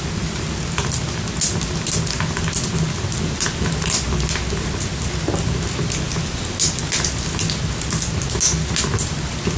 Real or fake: real